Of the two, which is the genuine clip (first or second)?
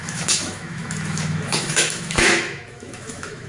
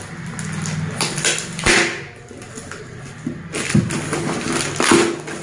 second